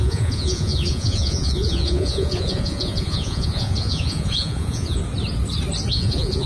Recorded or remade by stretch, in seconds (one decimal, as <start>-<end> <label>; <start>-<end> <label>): 0.0-5.0 remade; 5.0-5.9 recorded; 5.9-6.5 remade